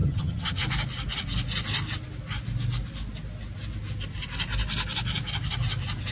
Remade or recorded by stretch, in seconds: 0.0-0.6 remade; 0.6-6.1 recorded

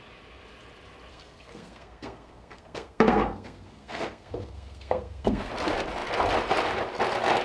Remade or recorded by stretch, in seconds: 0.0-1.1 recorded; 1.1-5.5 remade; 5.5-7.4 recorded

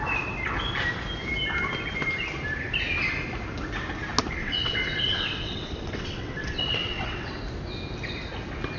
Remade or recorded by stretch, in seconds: 0.0-4.4 recorded; 4.4-7.4 remade; 7.4-8.8 recorded

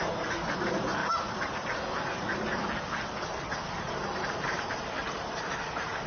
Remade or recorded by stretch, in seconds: 0.0-1.0 remade; 1.0-3.7 recorded; 3.7-6.1 remade